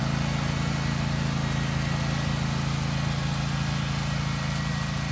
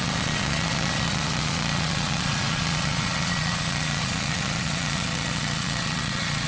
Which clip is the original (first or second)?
first